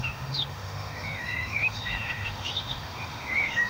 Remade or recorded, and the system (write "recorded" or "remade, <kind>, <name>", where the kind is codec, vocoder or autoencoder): remade, autoencoder, DAC-VAE